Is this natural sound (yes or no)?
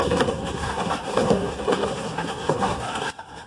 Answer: no